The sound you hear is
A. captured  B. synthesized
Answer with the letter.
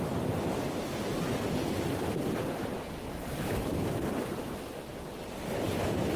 A